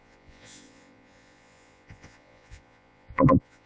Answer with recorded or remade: remade